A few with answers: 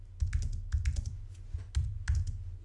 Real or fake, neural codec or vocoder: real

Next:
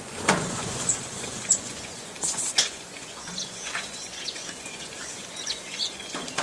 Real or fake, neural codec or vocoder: fake, vocoder, Vocos